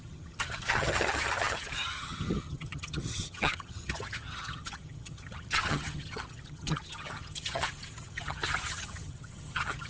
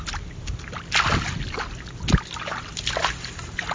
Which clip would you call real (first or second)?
second